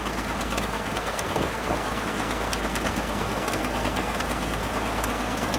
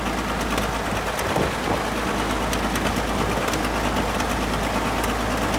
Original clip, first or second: second